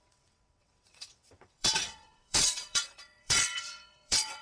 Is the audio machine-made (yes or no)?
yes